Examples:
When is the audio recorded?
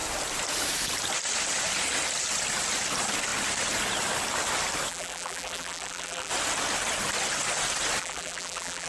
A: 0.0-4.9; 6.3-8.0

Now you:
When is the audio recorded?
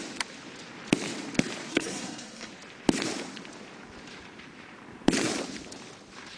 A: 0.0-1.7; 2.5-6.4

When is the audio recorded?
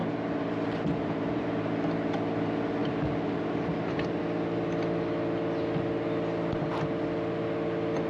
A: 1.7-2.8; 4.2-8.1